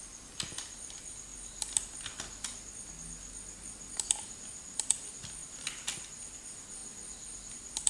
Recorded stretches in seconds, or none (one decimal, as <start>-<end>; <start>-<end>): 0.0-7.9